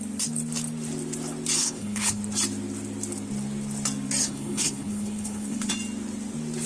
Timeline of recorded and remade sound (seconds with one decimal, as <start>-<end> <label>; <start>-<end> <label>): 0.0-1.6 recorded; 1.6-2.2 remade; 2.2-4.2 recorded; 4.2-5.7 remade; 5.7-6.7 recorded